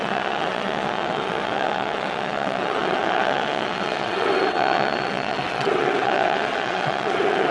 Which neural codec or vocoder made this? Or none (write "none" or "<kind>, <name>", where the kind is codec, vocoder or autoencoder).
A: vocoder, WaveNeXt